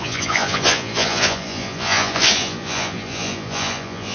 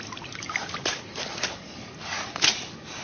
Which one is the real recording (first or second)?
second